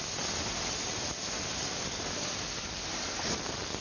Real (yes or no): yes